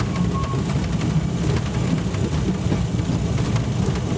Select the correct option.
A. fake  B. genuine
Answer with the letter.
B